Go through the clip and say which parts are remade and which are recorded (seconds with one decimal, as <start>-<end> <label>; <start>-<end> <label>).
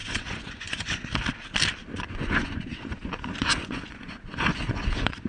0.0-1.1 remade; 1.1-1.8 recorded; 1.8-5.3 remade